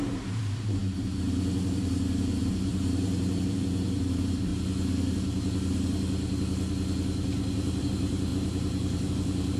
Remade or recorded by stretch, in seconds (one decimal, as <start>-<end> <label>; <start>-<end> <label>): 0.0-0.8 remade; 0.8-2.4 recorded; 2.4-4.5 remade; 4.5-7.8 recorded; 7.8-9.6 remade